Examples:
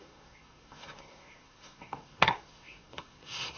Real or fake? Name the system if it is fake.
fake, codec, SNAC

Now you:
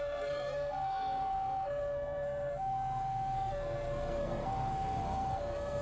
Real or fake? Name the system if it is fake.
fake, codec, SNAC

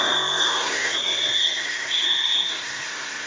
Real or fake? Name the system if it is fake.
fake, codec, SNAC